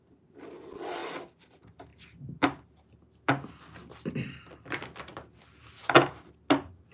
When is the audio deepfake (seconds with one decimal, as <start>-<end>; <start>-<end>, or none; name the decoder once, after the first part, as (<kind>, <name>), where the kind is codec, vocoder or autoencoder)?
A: none